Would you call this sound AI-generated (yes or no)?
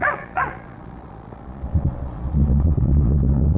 yes